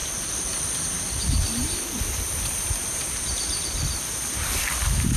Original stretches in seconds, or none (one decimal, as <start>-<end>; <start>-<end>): 0.0-5.2